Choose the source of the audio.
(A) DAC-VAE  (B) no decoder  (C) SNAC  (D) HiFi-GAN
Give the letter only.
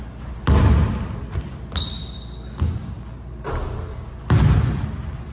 B